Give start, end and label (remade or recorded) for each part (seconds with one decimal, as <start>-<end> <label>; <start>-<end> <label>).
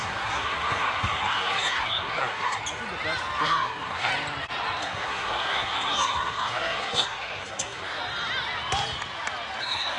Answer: 0.0-2.6 remade; 2.6-3.4 recorded; 3.4-4.1 remade; 4.1-4.8 recorded; 4.8-8.0 remade; 8.0-9.6 recorded; 9.6-10.0 remade